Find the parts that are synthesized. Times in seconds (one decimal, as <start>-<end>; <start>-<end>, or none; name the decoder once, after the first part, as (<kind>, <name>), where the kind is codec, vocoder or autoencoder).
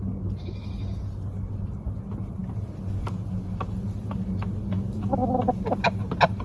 none